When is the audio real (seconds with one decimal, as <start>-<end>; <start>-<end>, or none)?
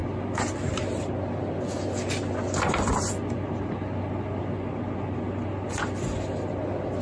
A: 0.0-7.0